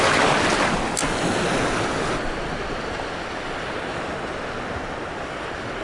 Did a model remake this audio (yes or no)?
no